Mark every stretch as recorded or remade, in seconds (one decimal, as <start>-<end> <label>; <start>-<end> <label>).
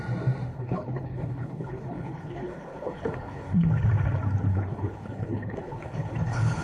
0.0-0.5 recorded; 0.5-3.7 remade; 3.7-4.5 recorded; 4.5-6.6 remade